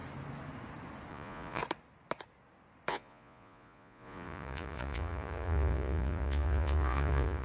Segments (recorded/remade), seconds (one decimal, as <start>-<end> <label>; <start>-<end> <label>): 0.0-1.1 recorded; 1.1-1.6 remade; 1.6-2.9 recorded; 2.9-7.4 remade